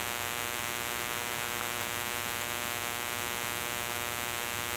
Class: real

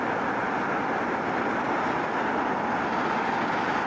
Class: real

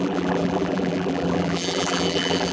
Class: fake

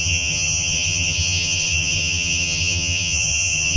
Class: fake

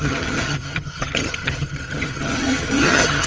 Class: fake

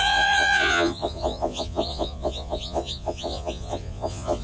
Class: fake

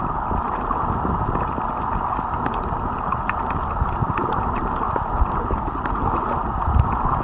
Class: real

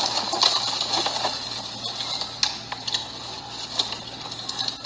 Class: real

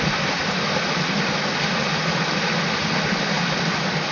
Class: real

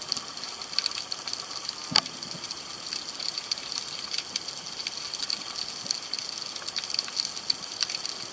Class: real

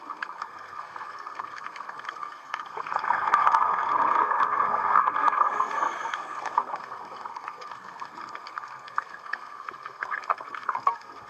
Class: fake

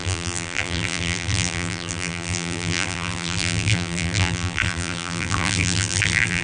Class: fake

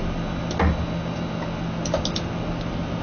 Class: real